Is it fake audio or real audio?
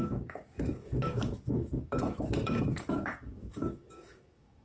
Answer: fake